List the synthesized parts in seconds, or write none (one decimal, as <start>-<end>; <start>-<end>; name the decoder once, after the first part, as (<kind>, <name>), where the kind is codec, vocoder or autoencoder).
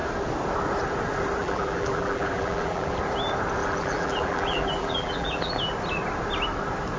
1.4-3.0 (vocoder, BigVGAN v2); 3.6-5.5